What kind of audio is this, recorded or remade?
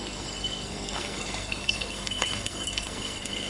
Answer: remade